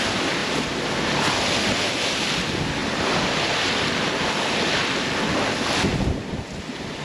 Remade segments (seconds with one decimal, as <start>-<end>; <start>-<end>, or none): 2.8-4.3